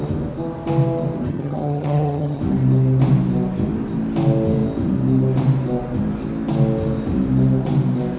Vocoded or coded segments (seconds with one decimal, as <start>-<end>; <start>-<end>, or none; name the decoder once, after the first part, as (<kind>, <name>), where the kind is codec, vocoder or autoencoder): 1.3-2.4 (vocoder, HiFi-GAN)